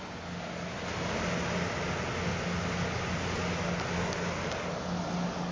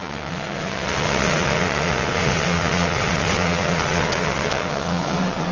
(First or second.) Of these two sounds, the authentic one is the first